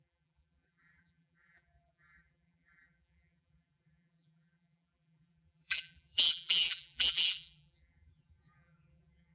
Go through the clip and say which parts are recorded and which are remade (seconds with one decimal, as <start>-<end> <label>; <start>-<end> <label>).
0.0-9.3 remade